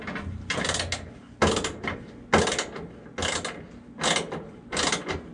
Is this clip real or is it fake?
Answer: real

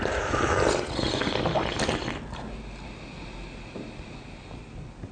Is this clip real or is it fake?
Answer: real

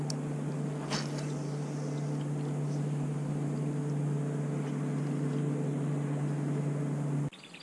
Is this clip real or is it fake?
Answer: real